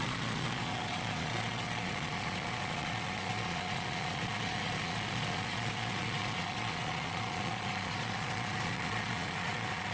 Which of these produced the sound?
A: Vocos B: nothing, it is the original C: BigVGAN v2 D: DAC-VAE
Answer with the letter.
A